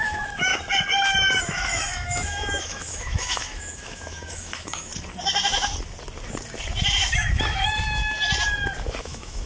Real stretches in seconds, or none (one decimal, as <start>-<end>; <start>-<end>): 0.5-1.4; 4.9-7.0; 8.0-9.0